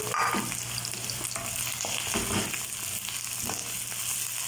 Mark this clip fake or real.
real